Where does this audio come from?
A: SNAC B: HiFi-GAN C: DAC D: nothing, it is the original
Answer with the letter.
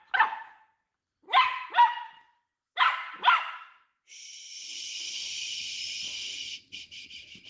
D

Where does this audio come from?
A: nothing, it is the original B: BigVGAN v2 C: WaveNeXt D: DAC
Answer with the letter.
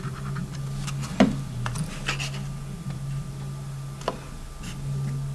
A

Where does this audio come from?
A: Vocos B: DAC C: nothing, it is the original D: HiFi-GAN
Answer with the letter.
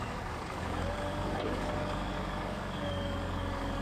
B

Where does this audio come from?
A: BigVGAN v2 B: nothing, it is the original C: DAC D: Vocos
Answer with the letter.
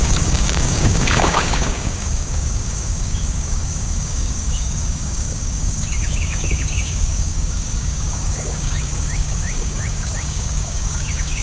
C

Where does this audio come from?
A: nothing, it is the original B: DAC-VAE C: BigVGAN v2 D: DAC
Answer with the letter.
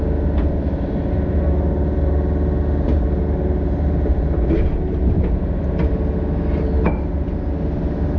A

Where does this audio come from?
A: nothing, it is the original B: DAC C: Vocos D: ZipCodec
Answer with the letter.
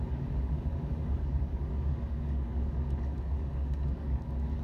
B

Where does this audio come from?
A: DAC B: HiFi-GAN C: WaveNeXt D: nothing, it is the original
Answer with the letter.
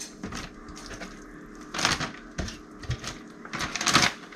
D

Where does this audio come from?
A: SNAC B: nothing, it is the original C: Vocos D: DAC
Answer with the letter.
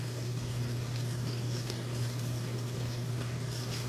D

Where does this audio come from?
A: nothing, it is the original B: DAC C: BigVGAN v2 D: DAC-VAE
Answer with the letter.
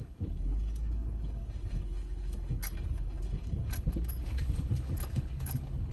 B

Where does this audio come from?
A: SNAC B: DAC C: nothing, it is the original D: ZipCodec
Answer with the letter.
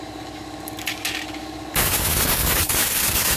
B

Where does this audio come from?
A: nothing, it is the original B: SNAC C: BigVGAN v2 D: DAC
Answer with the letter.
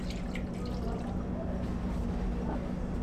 A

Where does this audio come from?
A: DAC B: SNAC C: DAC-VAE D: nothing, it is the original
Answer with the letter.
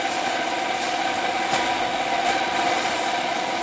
D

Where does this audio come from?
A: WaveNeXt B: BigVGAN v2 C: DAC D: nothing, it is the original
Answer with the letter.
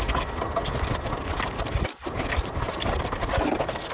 D